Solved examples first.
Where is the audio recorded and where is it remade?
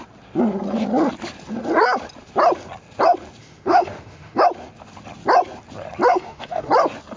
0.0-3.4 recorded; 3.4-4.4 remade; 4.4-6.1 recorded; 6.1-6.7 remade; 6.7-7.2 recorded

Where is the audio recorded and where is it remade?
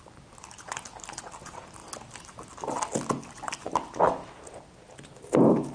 0.0-5.7 recorded